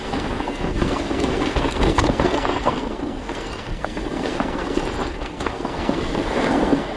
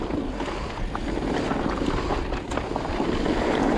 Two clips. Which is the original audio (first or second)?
second